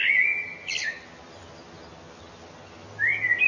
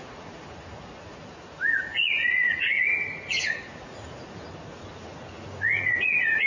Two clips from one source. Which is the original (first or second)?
first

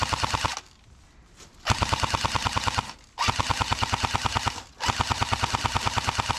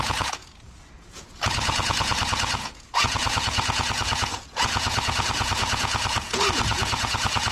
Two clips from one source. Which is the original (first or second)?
first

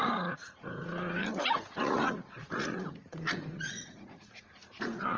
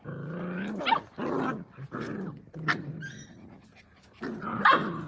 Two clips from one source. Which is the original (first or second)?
second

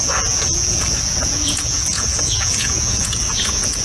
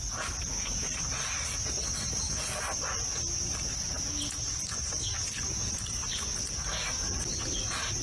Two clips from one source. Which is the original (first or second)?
second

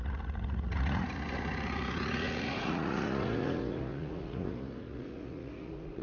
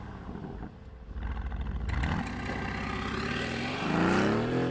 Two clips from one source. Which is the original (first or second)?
second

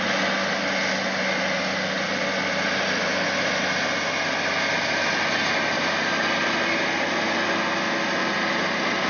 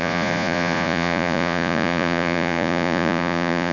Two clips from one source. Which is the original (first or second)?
first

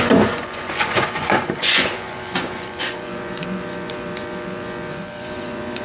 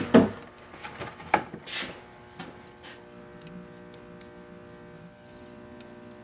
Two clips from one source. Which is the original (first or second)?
second